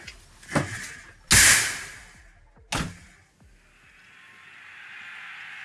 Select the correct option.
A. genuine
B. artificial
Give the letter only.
A